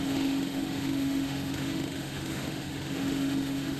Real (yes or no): no